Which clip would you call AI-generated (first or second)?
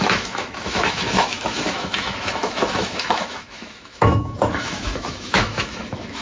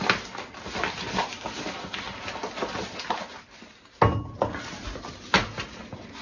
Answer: first